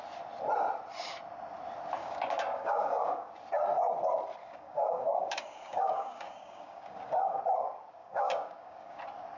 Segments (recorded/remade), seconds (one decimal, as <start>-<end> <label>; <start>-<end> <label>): 0.0-2.0 recorded; 2.0-3.3 remade; 3.3-4.4 recorded; 4.4-7.4 remade; 7.4-8.0 recorded; 8.0-9.0 remade; 9.0-9.4 recorded